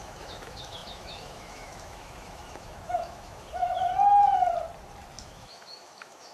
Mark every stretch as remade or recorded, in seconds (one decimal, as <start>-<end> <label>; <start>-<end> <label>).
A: 0.0-3.9 remade; 3.9-5.2 recorded; 5.2-6.3 remade